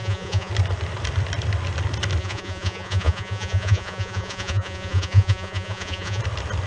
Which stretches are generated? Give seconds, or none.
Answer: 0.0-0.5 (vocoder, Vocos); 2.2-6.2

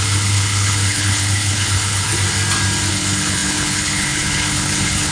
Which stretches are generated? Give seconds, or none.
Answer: 0.0-2.1 (codec, HILCodec); 2.9-5.1